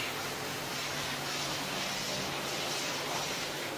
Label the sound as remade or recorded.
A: recorded